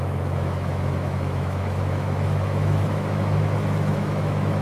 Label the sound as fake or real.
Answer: fake